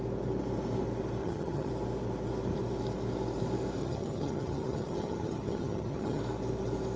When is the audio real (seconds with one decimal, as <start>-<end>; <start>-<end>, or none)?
0.0-1.2; 1.7-3.8; 6.2-7.0